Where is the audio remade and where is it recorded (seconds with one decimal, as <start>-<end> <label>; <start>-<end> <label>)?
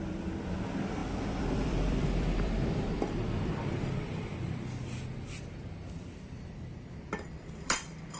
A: 0.0-8.2 remade